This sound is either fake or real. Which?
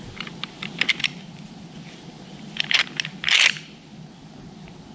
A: real